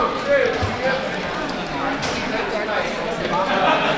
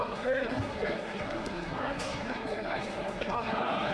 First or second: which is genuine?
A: first